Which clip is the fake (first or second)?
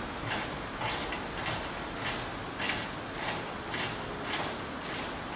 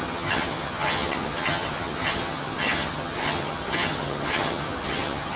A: second